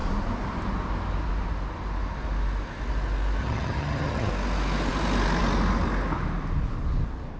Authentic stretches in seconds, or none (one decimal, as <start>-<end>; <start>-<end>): 0.0-3.4; 4.3-7.4